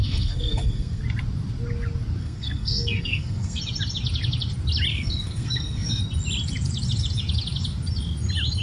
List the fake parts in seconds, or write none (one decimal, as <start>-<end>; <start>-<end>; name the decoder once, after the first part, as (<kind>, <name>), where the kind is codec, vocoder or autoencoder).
0.0-1.0 (codec, SNAC); 2.2-3.6; 4.9-6.0